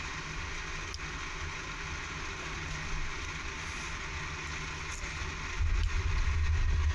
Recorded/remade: recorded